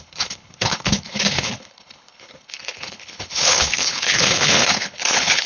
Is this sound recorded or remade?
remade